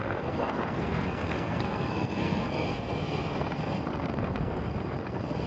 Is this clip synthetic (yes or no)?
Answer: yes